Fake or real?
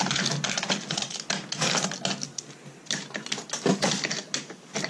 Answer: real